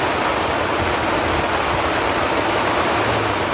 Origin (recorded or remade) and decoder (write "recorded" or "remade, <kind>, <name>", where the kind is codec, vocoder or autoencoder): recorded